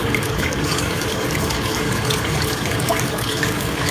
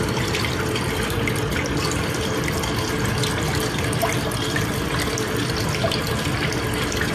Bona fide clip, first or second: second